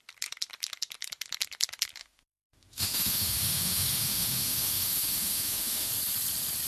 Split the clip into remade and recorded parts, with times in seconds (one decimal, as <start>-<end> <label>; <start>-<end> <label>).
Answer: 0.0-2.0 recorded; 2.0-5.9 remade; 5.9-6.7 recorded